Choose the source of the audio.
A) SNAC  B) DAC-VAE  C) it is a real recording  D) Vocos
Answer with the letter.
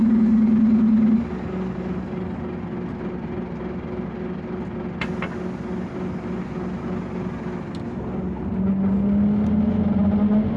C